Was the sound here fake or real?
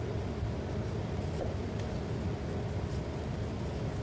real